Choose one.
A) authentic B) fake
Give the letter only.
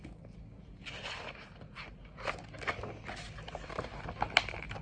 A